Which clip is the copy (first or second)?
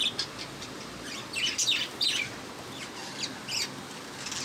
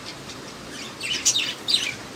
second